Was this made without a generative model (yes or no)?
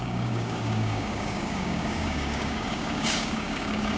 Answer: no